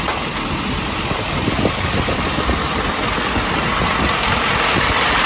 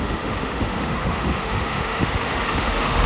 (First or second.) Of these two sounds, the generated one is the second